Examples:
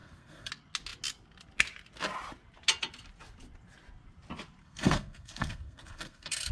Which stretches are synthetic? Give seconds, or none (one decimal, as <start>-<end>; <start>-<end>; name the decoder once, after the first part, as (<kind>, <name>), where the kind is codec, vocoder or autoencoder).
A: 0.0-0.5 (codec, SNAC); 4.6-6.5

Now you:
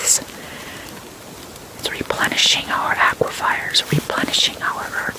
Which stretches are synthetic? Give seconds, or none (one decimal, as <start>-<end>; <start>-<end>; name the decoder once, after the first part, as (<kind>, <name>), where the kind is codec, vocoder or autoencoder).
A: none

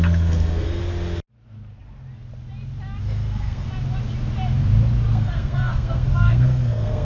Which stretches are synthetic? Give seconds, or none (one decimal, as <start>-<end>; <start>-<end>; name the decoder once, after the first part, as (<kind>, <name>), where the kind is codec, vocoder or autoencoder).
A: 0.0-0.8 (codec, SNAC); 3.0-3.7; 5.1-7.0

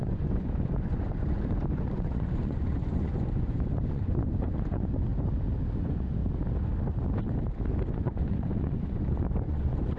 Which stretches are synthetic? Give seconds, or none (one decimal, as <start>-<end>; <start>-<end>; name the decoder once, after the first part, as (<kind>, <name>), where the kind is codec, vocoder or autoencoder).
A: 0.0-5.1 (vocoder, Vocos); 5.8-6.2; 7.9-10.0

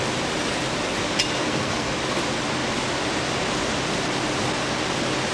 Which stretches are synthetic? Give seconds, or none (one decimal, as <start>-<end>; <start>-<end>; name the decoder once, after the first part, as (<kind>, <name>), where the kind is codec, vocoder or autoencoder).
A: 1.4-1.9 (codec, SNAC)

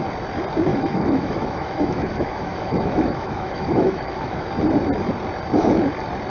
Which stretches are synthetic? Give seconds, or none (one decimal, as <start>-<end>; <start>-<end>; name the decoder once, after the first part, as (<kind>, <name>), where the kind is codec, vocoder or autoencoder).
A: 0.7-4.5 (autoencoder, DAC-VAE)